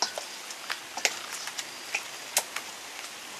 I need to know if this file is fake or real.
real